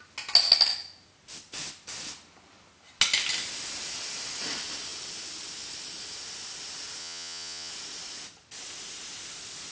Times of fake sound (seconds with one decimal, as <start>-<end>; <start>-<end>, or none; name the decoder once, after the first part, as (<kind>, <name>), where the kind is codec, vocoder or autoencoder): 7.0-7.7 (vocoder, Vocos)